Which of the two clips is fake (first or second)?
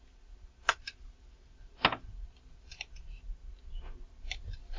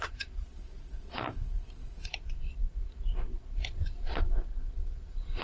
second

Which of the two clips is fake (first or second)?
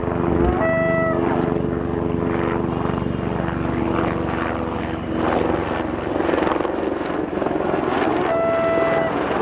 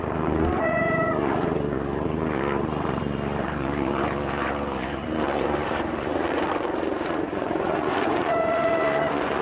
second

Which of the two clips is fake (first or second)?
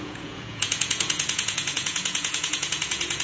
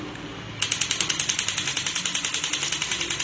first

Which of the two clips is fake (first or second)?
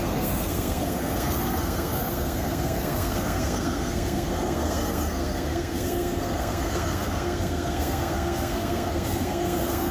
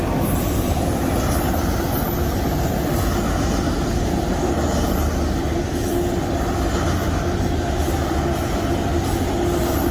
first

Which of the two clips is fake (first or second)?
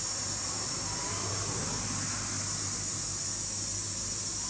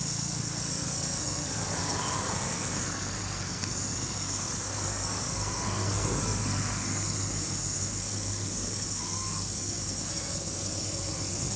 second